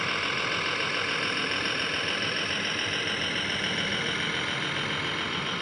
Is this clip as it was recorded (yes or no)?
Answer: no